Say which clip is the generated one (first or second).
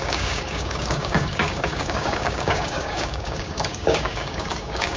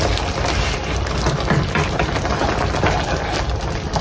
first